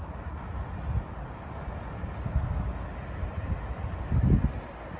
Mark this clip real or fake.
real